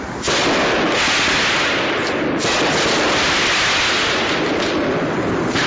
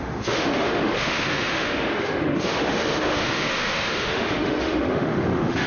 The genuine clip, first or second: first